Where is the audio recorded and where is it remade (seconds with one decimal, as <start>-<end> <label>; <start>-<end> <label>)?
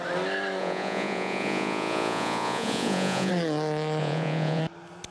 0.0-0.6 recorded; 0.6-3.3 remade; 3.3-4.0 recorded; 4.0-4.6 remade; 4.6-5.1 recorded